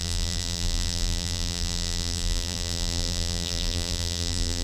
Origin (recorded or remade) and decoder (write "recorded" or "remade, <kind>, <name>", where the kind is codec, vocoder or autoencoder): remade, vocoder, BigVGAN v2